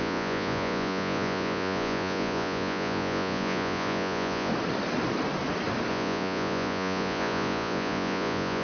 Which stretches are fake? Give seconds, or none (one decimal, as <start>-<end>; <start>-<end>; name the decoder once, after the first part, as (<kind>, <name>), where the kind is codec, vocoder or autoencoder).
0.0-4.5 (vocoder, Vocos); 5.9-8.6